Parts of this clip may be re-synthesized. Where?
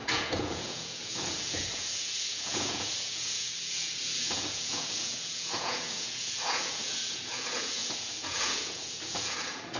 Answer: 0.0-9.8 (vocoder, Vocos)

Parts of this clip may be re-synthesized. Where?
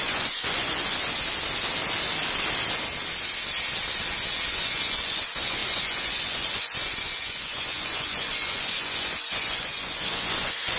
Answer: 0.0-1.2 (vocoder, Vocos); 4.5-10.8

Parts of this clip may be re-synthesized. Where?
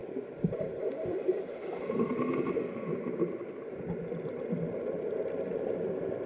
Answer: 0.0-2.1 (vocoder, BigVGAN v2); 2.9-3.5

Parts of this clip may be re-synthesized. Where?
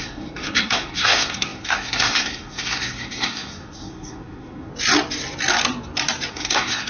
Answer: 0.0-4.7 (codec, SNAC); 6.3-6.9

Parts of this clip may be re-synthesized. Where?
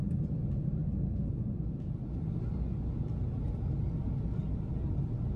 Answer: none